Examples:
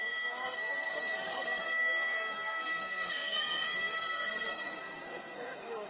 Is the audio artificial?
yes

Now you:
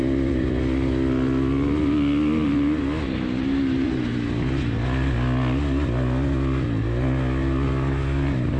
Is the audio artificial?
no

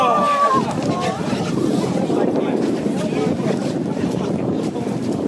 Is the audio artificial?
no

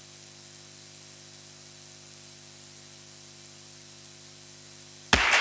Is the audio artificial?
no